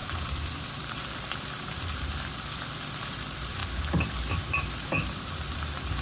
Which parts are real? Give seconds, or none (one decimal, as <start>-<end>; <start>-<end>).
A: 3.6-4.7